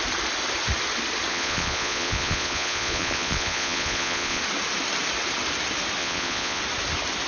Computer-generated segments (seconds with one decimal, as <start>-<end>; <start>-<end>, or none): 1.3-4.4; 6.0-6.6